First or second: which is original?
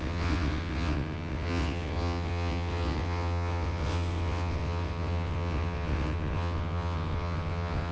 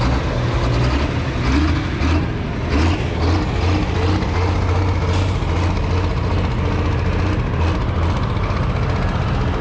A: second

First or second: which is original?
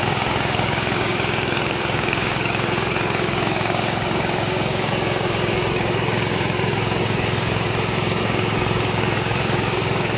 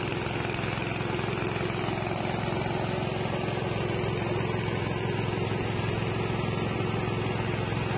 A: second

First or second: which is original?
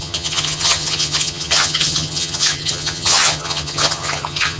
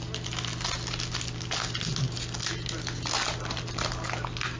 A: second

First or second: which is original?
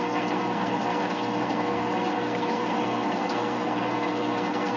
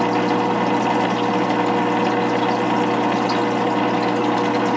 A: second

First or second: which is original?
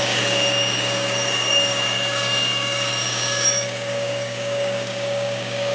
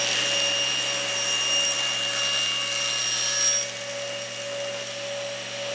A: second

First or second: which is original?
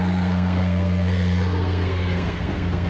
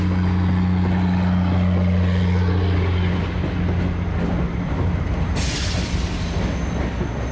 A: second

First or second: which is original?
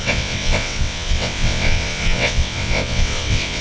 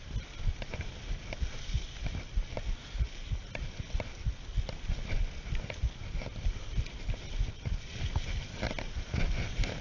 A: second